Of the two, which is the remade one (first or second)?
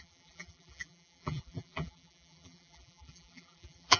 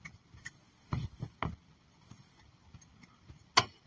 first